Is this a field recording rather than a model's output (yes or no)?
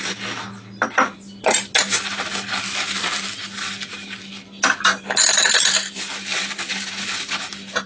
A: yes